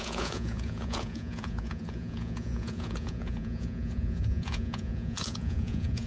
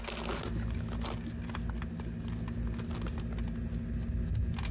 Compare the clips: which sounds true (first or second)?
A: second